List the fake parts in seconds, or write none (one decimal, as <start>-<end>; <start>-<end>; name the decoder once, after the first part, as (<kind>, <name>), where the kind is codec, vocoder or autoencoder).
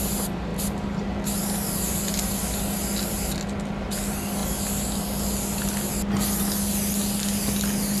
none